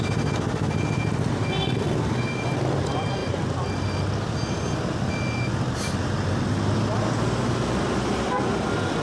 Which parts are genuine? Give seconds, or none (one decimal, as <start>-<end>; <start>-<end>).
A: 0.0-9.0